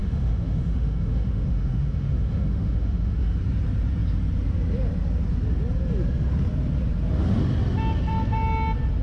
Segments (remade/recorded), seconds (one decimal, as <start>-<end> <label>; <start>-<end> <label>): 0.0-3.4 remade; 3.4-9.0 recorded